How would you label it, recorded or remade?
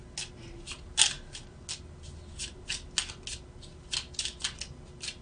recorded